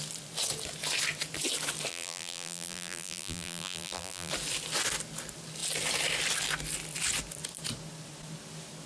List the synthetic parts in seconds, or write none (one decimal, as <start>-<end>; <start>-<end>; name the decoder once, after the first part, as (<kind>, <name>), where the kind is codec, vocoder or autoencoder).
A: 1.9-4.3 (vocoder, BigVGAN v2)